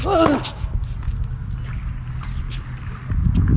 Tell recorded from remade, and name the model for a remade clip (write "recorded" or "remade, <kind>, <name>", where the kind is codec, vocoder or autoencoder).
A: recorded